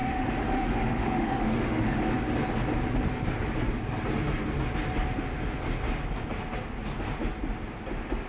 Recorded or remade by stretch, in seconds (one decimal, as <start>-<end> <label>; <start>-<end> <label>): 0.0-2.0 remade; 2.0-8.3 recorded